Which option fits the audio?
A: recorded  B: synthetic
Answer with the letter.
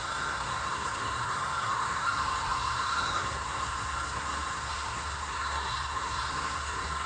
B